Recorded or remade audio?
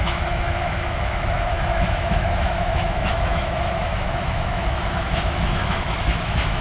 remade